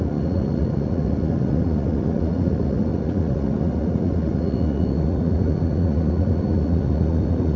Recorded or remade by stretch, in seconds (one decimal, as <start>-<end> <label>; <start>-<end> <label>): 0.0-7.6 remade